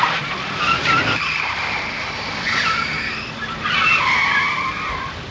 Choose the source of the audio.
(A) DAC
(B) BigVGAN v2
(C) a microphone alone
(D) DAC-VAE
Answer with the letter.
B